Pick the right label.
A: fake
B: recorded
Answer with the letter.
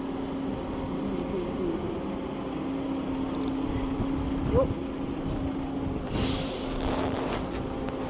B